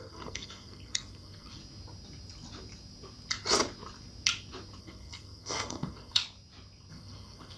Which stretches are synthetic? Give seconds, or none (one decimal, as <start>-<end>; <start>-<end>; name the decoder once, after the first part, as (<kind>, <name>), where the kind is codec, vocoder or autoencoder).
0.0-1.6 (codec, SNAC); 4.8-6.2; 6.9-7.6